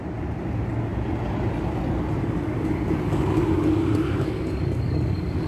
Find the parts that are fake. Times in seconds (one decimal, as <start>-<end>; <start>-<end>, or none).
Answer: 2.2-5.5